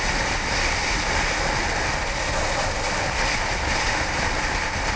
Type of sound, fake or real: real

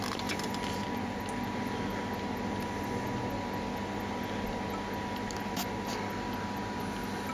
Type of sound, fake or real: real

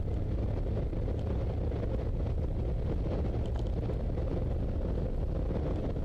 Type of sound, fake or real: real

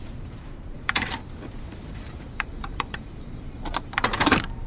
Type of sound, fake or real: fake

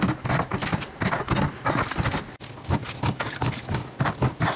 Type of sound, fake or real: real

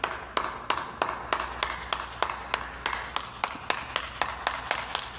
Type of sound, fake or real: real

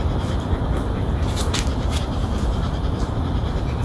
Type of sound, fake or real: fake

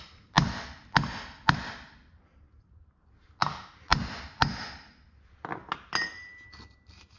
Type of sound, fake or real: real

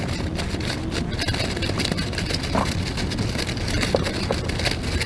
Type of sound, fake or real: real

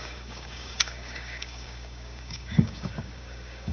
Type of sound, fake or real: fake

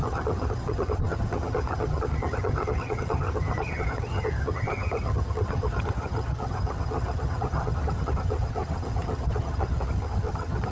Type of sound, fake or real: fake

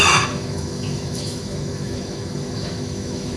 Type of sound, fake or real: fake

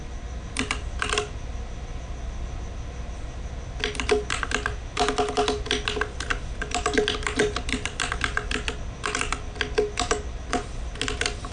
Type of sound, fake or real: real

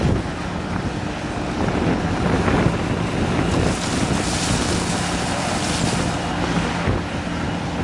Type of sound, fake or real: real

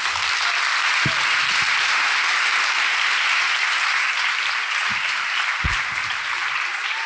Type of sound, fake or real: real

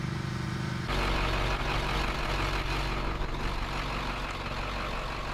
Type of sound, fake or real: real